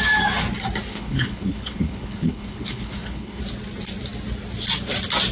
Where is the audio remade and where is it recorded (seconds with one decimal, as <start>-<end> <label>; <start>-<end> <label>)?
0.0-0.9 recorded; 0.9-3.4 remade; 3.4-5.3 recorded